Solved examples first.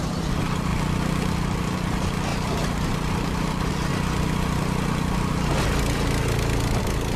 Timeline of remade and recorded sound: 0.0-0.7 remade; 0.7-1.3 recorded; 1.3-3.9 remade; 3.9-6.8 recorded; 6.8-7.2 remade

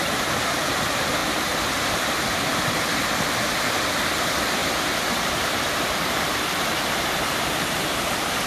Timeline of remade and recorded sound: 0.0-1.2 remade; 1.2-1.8 recorded; 1.8-8.5 remade

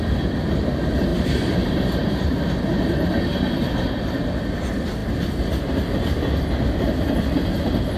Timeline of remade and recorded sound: 0.0-1.1 recorded; 1.1-4.3 remade; 4.3-8.0 recorded

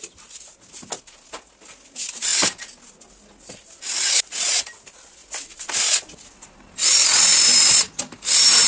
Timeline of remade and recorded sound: 0.0-8.7 recorded

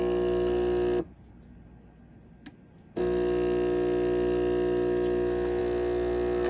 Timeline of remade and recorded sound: 0.0-6.5 recorded

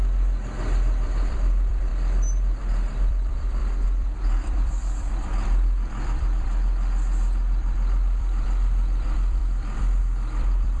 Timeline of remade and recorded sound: 0.0-1.9 remade; 1.9-3.1 recorded; 3.1-10.8 remade

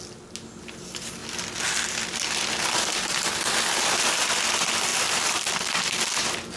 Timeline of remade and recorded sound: 0.0-4.9 recorded; 4.9-6.1 remade; 6.1-6.6 recorded